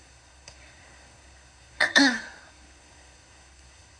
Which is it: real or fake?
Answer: fake